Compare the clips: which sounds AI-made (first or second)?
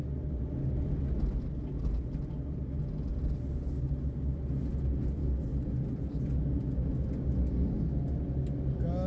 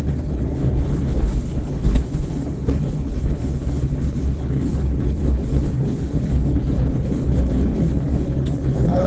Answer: second